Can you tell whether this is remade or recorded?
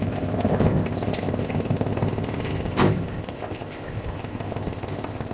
remade